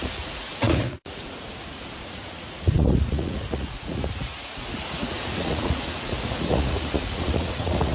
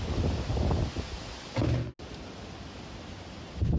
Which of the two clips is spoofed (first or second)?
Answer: first